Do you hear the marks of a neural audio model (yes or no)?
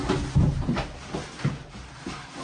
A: no